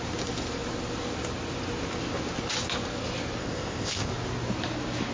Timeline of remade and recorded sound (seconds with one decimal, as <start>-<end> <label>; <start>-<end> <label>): 0.0-3.4 recorded; 3.4-4.1 remade; 4.1-5.1 recorded